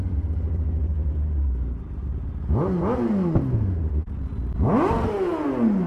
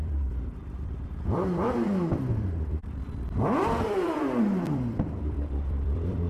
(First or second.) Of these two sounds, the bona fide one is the first